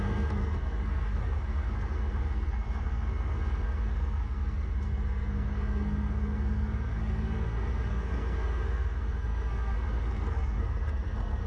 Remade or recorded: remade